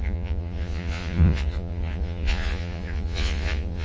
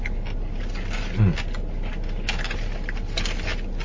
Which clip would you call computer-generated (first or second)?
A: first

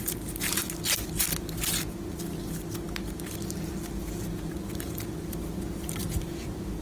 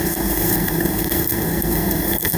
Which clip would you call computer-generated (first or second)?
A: second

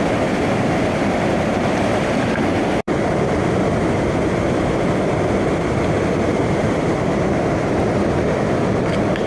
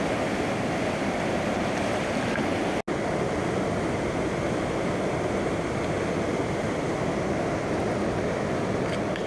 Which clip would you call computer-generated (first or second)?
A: first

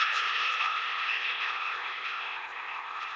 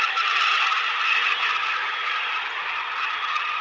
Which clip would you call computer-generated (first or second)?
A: first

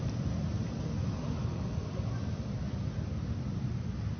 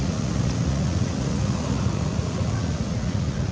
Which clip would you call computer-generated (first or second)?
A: second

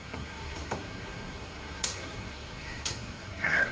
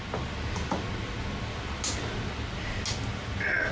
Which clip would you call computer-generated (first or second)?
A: first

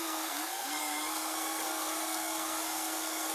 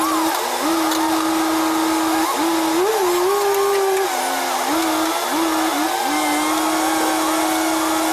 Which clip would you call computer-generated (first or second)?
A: first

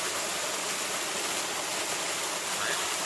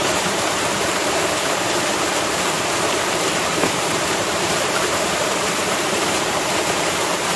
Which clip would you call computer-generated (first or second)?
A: second